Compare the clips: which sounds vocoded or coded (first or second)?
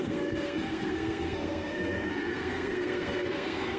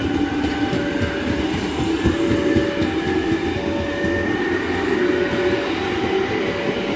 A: first